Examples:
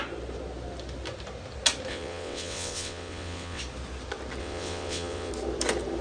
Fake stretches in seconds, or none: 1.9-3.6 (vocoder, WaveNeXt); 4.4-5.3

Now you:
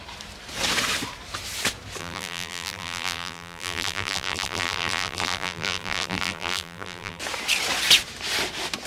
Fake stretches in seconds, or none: 2.0-7.2 (vocoder, BigVGAN v2)

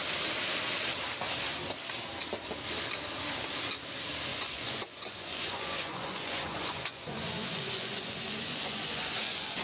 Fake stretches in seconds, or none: 4.3-9.6 (vocoder, Vocos)

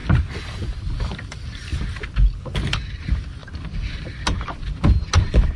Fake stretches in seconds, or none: 1.0-1.7 (vocoder, BigVGAN v2); 3.0-3.4

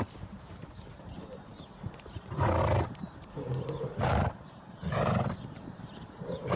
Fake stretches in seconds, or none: 0.0-6.6 (vocoder, BigVGAN v2)

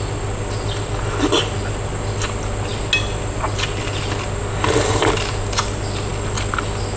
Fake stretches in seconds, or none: none